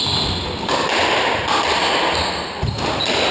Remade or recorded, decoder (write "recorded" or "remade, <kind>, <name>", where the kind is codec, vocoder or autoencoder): recorded